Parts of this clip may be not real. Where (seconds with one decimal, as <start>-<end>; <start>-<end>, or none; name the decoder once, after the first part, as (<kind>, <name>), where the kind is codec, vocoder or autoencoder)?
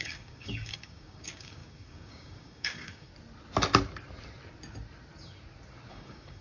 0.0-3.1 (codec, DAC); 5.9-6.4